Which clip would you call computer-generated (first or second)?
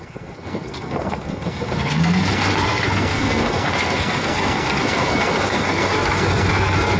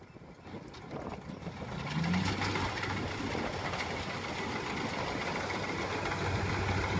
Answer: first